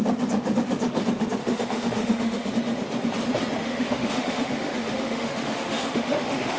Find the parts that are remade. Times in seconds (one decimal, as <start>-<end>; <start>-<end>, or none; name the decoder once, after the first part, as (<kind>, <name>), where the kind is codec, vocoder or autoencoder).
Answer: 1.4-2.5 (autoencoder, DAC-VAE); 3.6-6.6